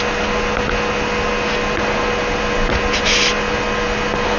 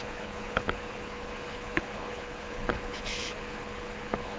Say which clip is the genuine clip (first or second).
first